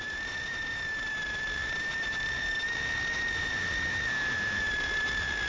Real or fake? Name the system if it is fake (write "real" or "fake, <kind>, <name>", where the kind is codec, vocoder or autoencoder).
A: fake, vocoder, BigVGAN v2